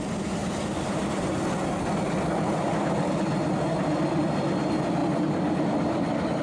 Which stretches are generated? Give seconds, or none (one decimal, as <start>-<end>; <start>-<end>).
none